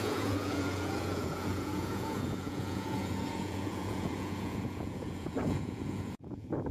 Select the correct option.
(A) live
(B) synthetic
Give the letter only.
B